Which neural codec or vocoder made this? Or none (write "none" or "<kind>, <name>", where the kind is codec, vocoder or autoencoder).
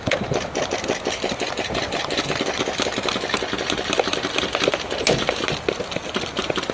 none